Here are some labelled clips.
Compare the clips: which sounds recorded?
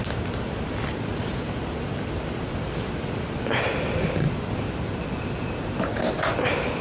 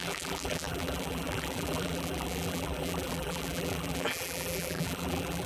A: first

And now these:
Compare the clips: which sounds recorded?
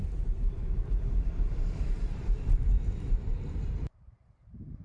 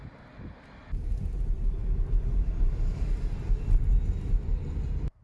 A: second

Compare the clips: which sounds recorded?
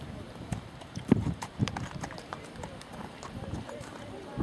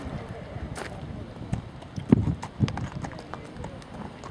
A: second